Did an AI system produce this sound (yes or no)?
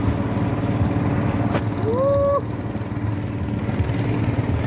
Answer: no